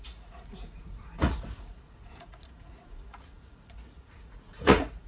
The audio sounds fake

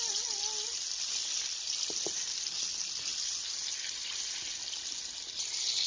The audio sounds real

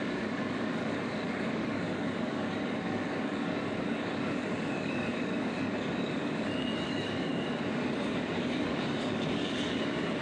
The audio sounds fake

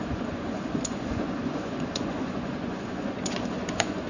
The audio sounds fake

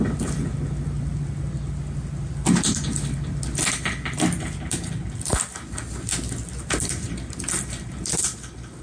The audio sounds real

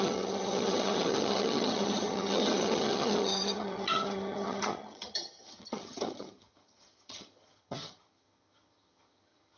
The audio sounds fake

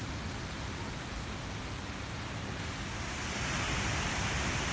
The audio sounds real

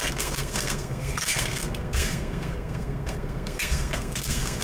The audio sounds fake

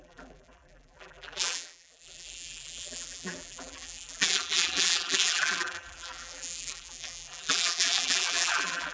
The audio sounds fake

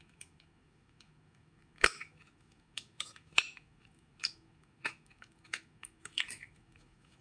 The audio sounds fake